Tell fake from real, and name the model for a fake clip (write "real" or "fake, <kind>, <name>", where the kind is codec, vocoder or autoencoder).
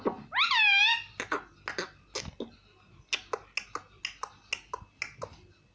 real